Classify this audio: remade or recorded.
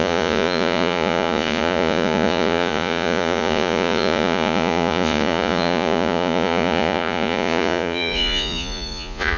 remade